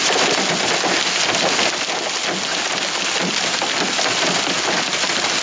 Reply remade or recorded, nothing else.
recorded